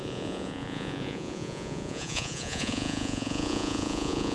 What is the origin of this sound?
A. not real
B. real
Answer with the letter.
A